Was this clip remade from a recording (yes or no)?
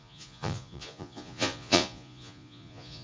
yes